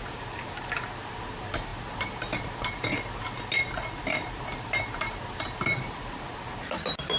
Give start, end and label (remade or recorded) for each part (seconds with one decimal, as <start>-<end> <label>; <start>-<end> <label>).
0.0-7.2 recorded